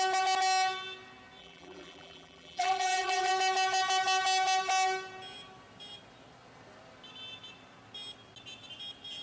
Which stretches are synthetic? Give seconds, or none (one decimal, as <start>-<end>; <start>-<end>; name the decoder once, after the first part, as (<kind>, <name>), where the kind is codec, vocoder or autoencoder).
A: 1.4-3.3 (vocoder, BigVGAN v2)